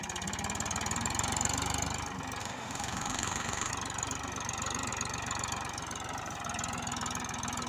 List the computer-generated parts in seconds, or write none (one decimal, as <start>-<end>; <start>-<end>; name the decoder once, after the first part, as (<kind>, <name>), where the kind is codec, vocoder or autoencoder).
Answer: 2.4-3.7 (autoencoder, DAC-VAE)